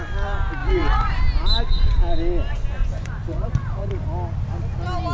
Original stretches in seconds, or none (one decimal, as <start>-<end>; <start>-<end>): 0.0-0.6; 1.2-2.8; 3.9-5.1